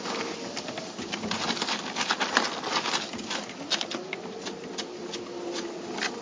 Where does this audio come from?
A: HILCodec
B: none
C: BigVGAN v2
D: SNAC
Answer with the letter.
B